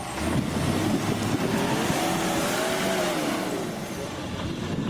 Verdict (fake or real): real